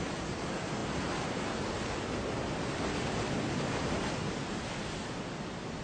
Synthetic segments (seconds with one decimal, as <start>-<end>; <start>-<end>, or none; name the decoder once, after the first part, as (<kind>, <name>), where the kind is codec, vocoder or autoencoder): none